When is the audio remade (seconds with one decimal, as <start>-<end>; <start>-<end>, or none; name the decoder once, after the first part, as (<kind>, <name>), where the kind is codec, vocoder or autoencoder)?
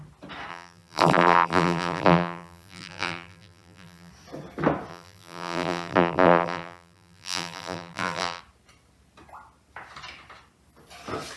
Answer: 0.5-4.1 (vocoder, BigVGAN v2); 4.9-8.4